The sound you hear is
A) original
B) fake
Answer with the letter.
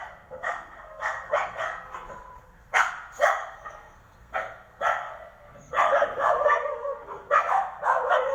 B